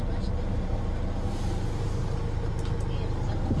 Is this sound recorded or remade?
recorded